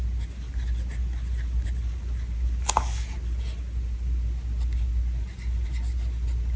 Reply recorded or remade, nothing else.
recorded